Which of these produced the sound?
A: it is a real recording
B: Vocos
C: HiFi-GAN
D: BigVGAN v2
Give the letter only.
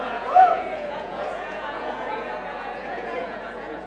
B